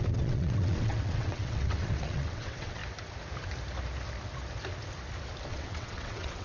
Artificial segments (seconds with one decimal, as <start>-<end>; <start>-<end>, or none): 0.0-2.8; 5.5-6.4

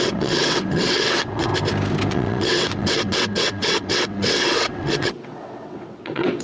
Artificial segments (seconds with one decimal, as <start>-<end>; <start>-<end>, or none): 0.0-1.5; 2.1-6.4